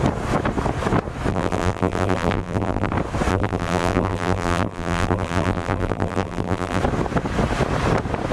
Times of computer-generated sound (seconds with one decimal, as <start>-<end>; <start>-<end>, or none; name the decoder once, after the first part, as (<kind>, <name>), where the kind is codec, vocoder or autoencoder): 1.3-2.9 (vocoder, BigVGAN v2); 3.3-6.8